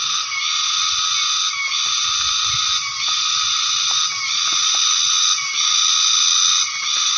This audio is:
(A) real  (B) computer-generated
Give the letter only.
A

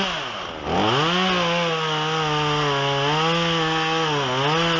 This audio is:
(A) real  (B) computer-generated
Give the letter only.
A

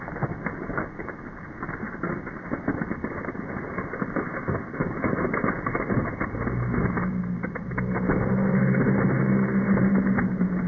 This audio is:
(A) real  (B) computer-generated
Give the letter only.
A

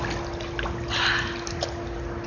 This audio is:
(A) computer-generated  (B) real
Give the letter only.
B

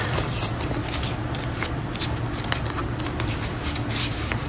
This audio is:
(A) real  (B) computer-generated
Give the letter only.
A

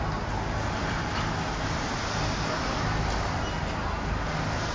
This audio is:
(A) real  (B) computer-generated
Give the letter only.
A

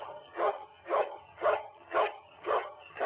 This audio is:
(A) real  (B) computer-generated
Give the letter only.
B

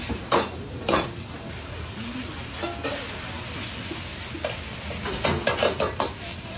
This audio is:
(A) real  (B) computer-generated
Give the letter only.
A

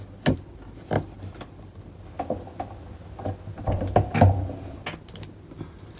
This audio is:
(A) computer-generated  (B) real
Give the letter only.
B